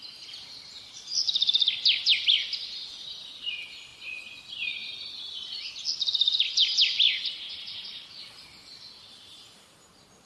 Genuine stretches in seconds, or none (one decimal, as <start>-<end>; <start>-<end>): 0.0-3.9; 4.4-10.3